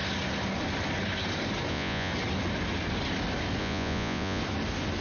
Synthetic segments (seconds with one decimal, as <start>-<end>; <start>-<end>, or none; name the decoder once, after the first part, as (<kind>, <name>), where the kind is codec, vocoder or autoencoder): 1.7-2.1 (vocoder, Vocos); 3.6-4.4